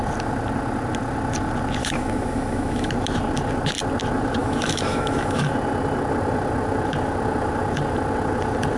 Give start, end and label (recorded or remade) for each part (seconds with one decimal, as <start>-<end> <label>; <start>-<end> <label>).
0.0-1.8 recorded; 1.8-2.9 remade; 2.9-4.4 recorded; 4.4-5.5 remade; 5.5-8.8 recorded